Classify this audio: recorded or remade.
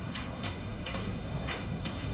remade